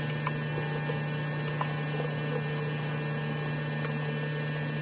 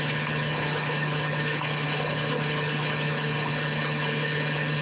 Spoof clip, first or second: second